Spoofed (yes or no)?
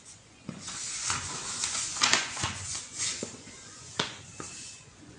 yes